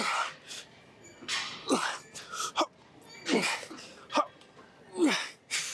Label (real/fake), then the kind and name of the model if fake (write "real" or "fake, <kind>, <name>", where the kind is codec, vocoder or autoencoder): real